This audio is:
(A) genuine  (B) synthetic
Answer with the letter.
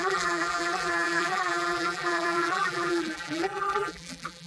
B